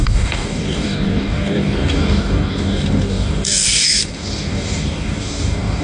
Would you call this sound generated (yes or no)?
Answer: yes